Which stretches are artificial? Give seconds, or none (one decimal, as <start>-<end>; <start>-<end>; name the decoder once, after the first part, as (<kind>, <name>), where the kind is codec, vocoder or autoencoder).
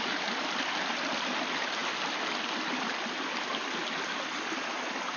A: none